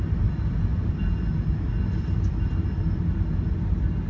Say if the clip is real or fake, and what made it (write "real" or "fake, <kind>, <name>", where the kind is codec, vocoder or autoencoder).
real